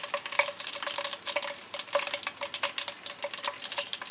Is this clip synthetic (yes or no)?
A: no